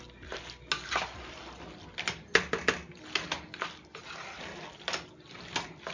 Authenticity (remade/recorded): recorded